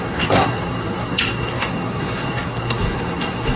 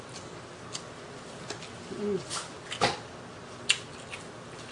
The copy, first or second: first